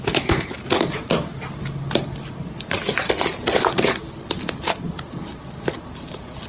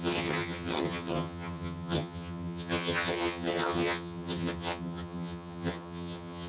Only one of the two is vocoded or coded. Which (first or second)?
second